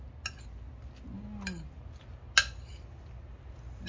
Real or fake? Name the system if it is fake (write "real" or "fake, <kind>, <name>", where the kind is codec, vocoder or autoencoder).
real